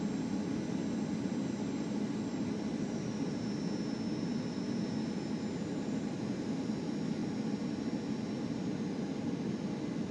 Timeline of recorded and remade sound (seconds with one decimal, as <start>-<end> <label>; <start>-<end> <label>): 0.0-10.1 recorded